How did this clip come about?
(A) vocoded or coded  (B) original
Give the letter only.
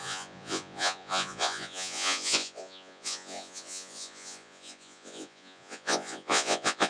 A